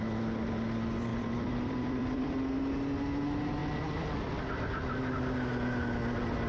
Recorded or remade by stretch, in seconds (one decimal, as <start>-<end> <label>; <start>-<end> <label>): 0.0-1.1 recorded; 1.1-2.3 remade; 2.3-6.5 recorded